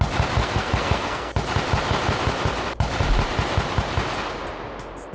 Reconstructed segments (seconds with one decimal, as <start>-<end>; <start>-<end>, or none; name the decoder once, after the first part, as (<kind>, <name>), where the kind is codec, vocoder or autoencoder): 0.4-1.3 (codec, SNAC)